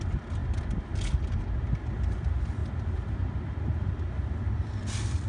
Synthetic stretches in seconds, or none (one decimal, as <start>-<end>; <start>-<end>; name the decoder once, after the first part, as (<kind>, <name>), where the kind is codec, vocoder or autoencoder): none